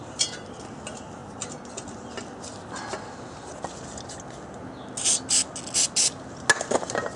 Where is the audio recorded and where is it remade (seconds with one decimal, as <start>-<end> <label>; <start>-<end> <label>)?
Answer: 0.0-1.2 remade; 1.2-1.7 recorded; 1.7-2.5 remade; 2.5-6.8 recorded; 6.8-7.2 remade